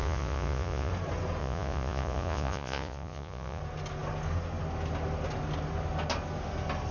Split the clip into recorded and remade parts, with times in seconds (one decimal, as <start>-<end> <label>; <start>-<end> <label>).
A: 0.0-0.9 remade; 0.9-1.4 recorded; 1.4-3.6 remade; 3.6-6.9 recorded